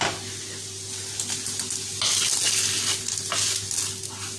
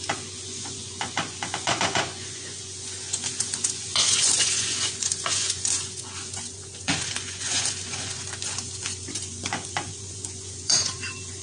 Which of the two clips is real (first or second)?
first